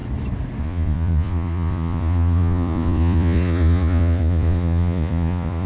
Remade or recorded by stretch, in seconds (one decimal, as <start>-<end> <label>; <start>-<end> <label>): 0.0-0.6 recorded; 0.6-5.7 remade